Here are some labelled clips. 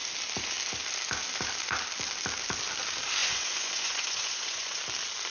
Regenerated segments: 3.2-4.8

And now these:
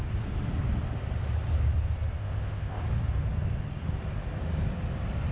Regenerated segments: 2.2-2.8

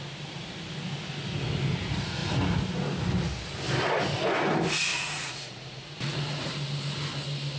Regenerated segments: 4.9-6.5

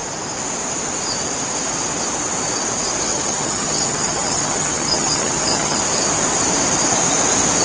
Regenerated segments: 3.1-5.8

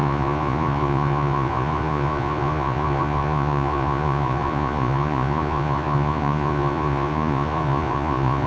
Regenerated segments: 0.0-8.5

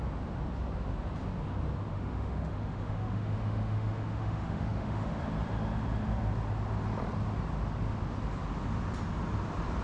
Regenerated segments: 1.9-5.2